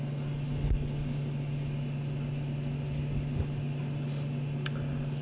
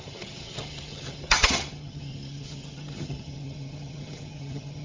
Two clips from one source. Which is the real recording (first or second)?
first